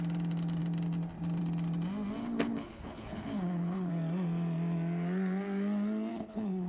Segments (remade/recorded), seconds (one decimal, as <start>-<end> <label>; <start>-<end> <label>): 0.0-2.2 recorded; 2.2-3.9 remade; 3.9-6.1 recorded; 6.1-6.7 remade